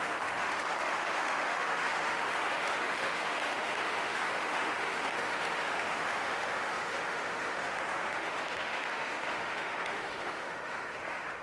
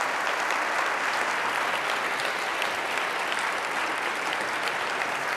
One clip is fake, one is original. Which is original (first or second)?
second